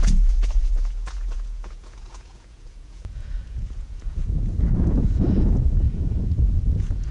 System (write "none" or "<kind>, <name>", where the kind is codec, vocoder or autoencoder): vocoder, Vocos